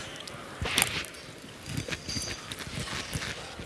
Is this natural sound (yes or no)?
yes